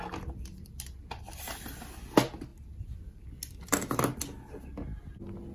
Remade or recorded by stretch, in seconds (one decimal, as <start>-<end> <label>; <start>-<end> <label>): 0.0-5.5 recorded